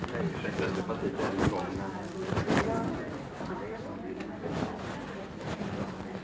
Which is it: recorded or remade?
recorded